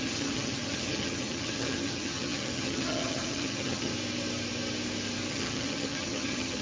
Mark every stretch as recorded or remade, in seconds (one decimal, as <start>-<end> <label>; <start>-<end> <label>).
0.0-3.9 remade; 3.9-5.3 recorded; 5.3-6.6 remade